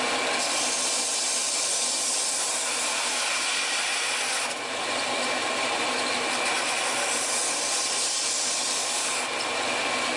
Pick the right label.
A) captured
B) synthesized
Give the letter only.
A